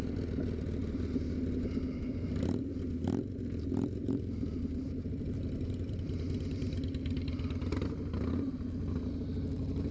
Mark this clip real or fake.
real